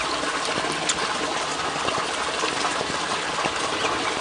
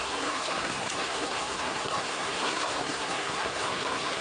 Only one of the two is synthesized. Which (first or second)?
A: second